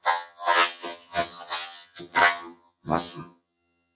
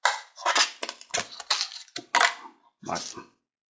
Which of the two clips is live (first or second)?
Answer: second